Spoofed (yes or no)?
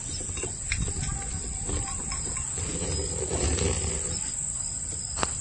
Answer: no